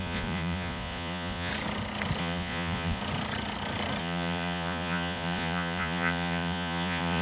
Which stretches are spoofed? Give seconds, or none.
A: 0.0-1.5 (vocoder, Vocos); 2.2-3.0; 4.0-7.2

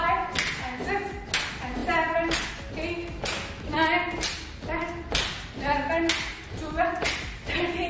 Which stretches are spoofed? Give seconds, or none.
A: none

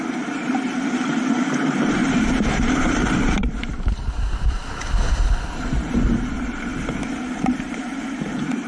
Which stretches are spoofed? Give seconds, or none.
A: 0.0-6.7 (vocoder, BigVGAN v2); 7.3-8.7

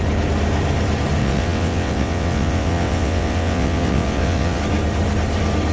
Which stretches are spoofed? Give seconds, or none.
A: 1.2-4.6 (vocoder, WaveNeXt)